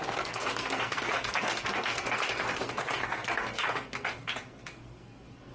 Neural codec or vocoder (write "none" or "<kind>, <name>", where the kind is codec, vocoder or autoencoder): codec, SNAC